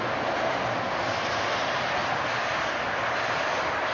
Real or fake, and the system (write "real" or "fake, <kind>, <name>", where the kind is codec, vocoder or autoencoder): real